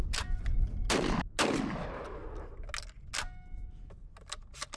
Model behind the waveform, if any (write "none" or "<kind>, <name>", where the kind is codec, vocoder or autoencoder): none